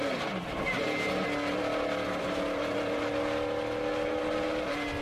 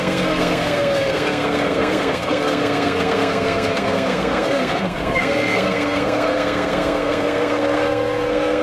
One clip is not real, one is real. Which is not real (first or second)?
second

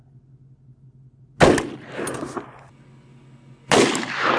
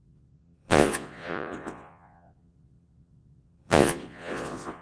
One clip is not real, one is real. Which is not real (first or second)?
second